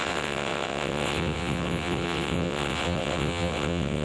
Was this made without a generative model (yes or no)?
no